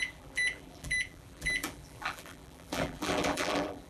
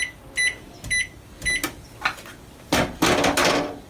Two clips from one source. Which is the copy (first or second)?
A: first